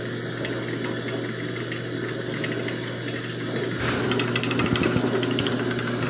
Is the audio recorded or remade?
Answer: recorded